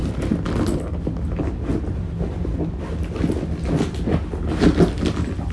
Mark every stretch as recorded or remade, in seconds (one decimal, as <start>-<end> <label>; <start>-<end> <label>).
0.0-5.5 recorded